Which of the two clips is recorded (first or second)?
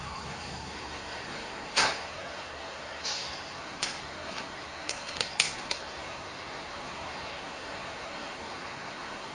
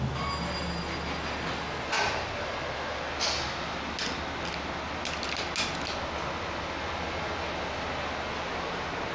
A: second